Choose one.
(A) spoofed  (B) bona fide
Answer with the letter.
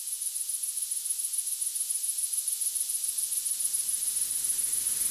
B